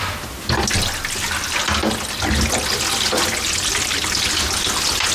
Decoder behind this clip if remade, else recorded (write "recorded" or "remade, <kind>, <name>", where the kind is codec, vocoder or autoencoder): recorded